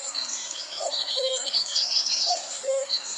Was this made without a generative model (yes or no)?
no